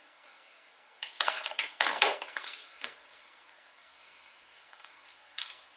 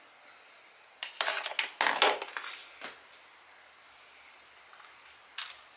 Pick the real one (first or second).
second